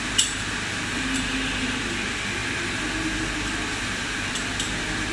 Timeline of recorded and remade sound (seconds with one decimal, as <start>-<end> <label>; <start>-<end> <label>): 0.0-2.4 remade; 2.4-5.1 recorded